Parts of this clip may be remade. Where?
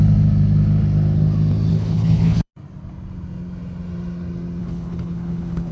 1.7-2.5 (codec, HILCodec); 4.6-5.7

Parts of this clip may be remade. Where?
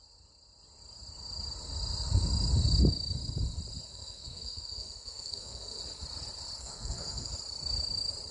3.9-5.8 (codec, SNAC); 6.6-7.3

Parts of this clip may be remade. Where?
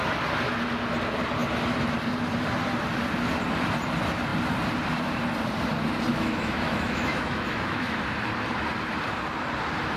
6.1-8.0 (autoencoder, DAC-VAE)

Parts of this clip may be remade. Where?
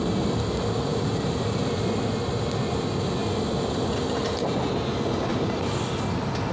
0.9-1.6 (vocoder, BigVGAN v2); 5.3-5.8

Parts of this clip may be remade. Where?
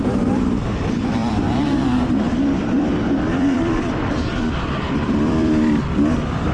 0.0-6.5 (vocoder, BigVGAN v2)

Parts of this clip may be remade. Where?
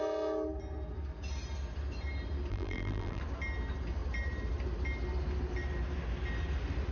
2.5-3.2 (vocoder, BigVGAN v2)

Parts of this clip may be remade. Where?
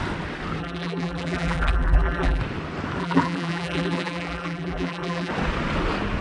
0.6-2.4 (vocoder, BigVGAN v2); 3.0-5.3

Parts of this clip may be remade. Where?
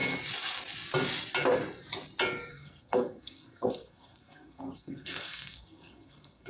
2.5-6.5 (codec, SNAC)